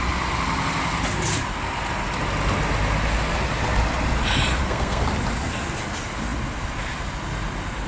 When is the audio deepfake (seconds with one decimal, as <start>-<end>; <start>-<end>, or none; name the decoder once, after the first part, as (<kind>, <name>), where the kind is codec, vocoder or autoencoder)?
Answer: 4.6-5.1 (codec, SNAC)